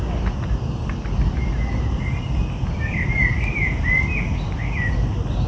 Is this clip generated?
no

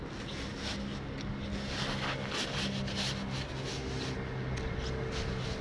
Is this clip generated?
no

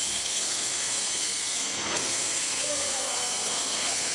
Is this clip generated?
yes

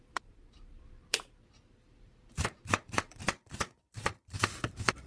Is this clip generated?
yes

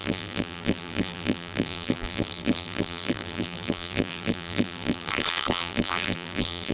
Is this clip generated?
yes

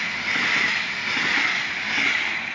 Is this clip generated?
no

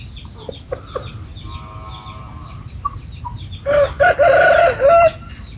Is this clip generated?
no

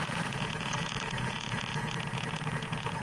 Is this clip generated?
yes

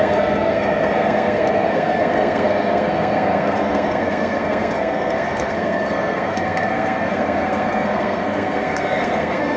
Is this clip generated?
yes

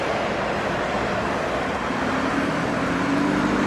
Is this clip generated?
no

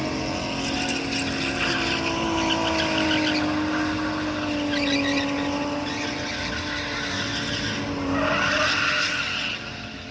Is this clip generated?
no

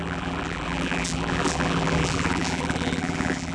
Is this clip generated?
yes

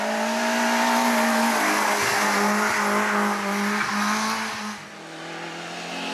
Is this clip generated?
no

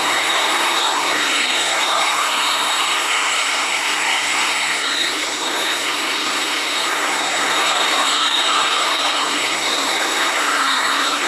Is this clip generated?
yes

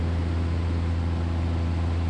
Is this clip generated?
no